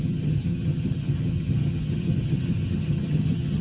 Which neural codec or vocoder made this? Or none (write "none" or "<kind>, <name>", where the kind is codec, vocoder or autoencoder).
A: vocoder, HiFi-GAN